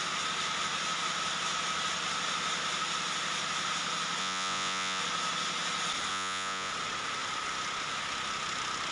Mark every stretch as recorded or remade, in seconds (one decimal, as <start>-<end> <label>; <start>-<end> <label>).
0.0-4.2 recorded; 4.2-5.0 remade; 5.0-6.1 recorded; 6.1-6.7 remade; 6.7-8.9 recorded